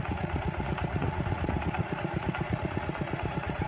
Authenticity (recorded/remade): remade